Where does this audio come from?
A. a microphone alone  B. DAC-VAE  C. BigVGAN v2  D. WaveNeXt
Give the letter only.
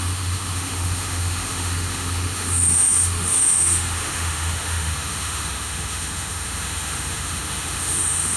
B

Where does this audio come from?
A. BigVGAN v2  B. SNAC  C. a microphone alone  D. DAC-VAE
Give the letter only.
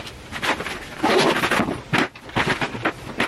C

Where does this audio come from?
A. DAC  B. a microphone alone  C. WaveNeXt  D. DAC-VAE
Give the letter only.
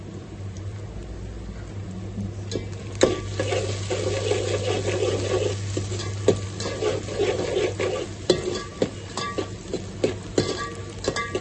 B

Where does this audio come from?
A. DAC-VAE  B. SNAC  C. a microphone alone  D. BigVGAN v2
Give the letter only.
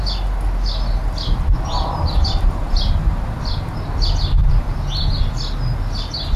C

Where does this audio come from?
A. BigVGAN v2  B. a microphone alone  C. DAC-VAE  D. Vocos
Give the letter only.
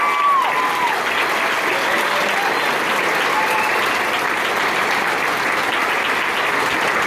B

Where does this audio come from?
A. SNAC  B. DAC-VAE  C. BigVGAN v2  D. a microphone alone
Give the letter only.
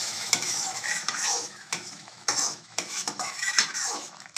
B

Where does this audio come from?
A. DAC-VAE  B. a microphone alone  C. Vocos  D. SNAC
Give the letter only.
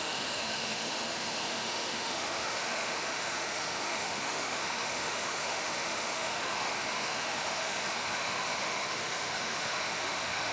A